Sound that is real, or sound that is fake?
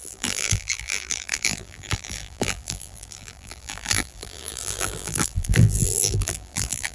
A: fake